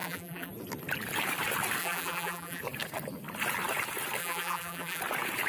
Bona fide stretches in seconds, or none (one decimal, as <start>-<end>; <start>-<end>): 0.5-1.8; 2.6-4.2; 5.0-5.5

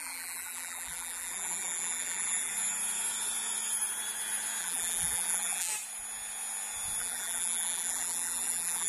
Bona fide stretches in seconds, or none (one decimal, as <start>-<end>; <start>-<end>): 2.5-4.6; 5.7-7.0